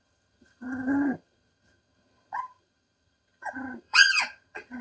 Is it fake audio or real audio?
fake